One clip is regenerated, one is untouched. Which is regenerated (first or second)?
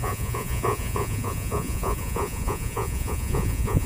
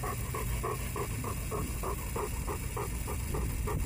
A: first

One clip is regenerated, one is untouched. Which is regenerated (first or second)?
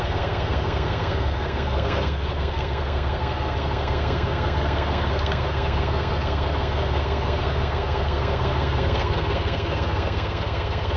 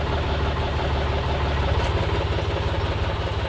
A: first